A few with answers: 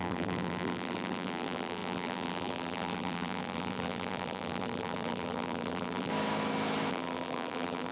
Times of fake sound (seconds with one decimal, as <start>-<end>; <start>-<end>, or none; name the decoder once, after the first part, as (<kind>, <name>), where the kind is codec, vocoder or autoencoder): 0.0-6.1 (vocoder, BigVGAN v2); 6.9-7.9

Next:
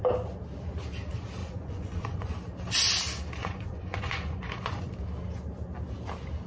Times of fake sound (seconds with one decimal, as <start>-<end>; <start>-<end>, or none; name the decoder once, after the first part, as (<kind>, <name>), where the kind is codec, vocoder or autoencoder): 1.4-2.3 (vocoder, Vocos); 3.4-4.9

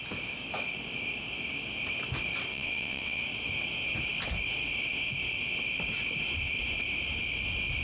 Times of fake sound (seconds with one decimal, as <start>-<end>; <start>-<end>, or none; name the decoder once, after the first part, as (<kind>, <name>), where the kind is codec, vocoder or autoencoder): 2.5-3.2 (vocoder, WaveNeXt)

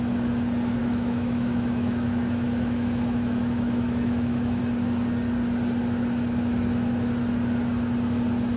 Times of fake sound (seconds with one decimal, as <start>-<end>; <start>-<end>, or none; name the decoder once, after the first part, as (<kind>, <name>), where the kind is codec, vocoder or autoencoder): 0.8-4.6 (autoencoder, DAC-VAE)

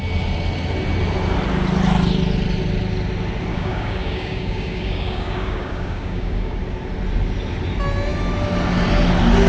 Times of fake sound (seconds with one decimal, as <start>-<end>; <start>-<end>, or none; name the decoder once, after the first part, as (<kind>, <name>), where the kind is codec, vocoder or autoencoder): 3.5-6.6 (codec, DAC)

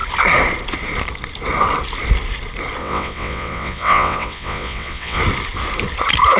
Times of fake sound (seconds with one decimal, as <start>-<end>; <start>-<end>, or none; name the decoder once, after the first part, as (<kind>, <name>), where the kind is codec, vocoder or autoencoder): 2.8-5.2 (vocoder, WaveNeXt)

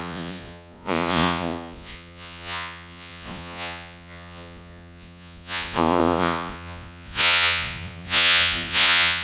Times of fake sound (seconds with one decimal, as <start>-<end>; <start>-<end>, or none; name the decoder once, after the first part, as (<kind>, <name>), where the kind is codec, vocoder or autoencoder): 0.0-9.2 (vocoder, Vocos)